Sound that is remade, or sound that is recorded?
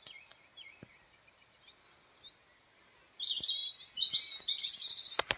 recorded